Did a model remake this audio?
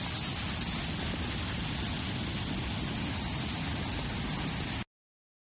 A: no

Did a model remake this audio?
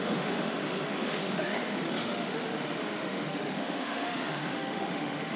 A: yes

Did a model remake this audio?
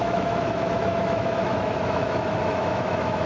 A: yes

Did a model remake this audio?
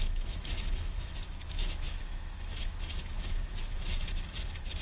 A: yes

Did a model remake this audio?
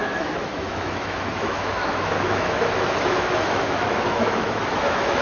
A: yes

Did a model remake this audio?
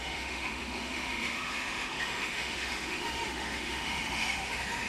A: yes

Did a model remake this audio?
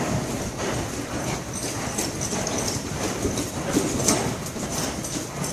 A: no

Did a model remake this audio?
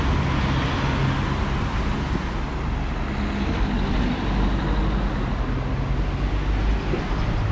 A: no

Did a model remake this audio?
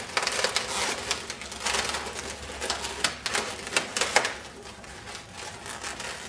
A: no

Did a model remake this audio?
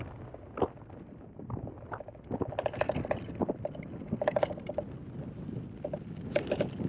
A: no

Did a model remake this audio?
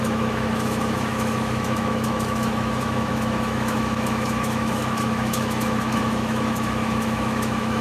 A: yes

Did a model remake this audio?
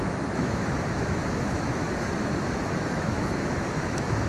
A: yes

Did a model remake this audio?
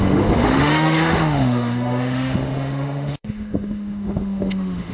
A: yes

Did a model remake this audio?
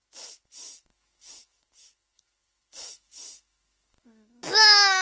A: yes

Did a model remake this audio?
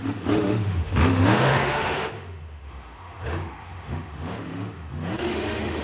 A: yes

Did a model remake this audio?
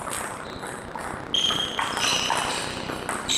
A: no